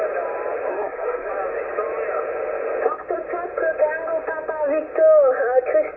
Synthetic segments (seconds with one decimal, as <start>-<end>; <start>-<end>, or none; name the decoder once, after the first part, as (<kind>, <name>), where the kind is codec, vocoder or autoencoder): 0.7-1.3 (codec, SNAC)